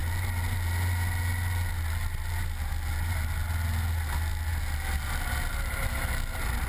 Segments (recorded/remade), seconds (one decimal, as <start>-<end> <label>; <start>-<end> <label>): 0.0-6.7 recorded

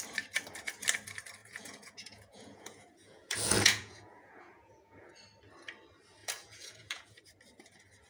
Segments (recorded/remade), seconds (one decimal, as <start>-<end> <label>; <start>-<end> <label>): 0.0-1.4 recorded; 1.4-5.1 remade; 5.1-6.2 recorded; 6.2-7.2 remade; 7.2-8.1 recorded

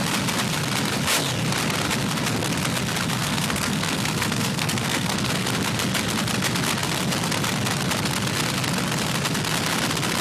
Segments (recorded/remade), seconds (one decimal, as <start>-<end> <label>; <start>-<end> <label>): 0.0-3.2 recorded; 3.2-5.3 remade; 5.3-10.2 recorded

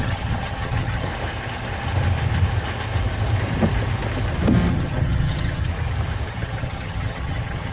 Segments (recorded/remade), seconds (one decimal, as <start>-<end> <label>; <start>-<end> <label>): 0.0-1.1 remade; 1.1-4.7 recorded; 4.7-5.7 remade; 5.7-6.3 recorded; 6.3-7.7 remade

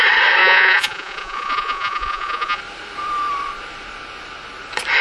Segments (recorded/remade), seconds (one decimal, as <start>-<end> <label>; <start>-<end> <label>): 0.0-0.4 recorded; 0.4-2.6 remade; 2.6-5.0 recorded